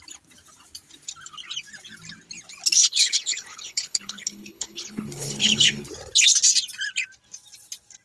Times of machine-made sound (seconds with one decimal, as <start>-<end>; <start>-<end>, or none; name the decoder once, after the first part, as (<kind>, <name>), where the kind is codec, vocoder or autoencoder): 2.8-5.9 (codec, HILCodec)